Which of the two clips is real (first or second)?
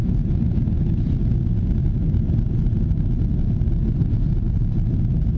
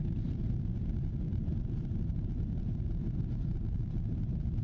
first